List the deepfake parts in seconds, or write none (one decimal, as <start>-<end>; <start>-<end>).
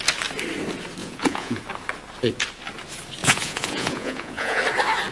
1.0-1.6; 3.2-4.6